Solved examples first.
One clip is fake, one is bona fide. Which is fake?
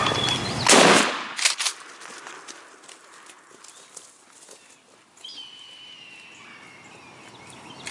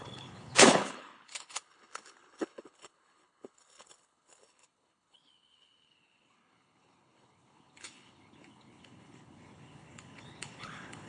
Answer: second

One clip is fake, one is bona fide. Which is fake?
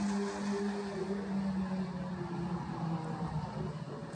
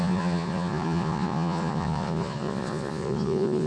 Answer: second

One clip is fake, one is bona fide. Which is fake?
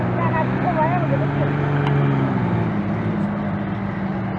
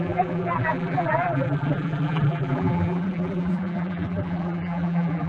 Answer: second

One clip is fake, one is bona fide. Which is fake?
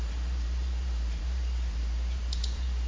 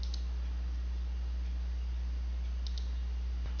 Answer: first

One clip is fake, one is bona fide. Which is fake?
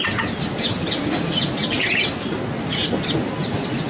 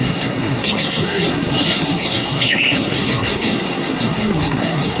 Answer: second